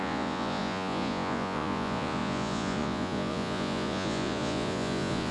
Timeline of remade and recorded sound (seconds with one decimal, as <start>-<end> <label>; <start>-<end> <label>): 0.0-5.3 remade